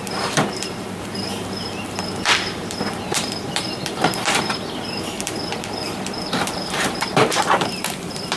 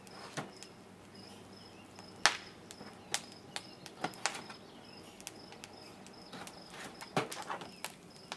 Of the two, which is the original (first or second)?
second